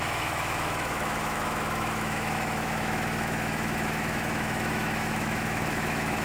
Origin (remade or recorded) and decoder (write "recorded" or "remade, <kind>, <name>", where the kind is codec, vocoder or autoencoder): remade, autoencoder, DAC-VAE